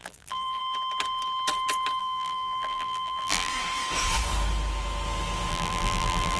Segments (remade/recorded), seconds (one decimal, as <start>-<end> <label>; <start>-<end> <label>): 0.0-0.6 remade; 0.6-2.0 recorded; 2.0-3.5 remade; 3.5-5.5 recorded; 5.5-6.4 remade